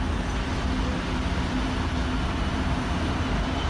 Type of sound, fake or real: real